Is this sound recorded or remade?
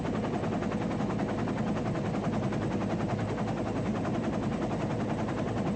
recorded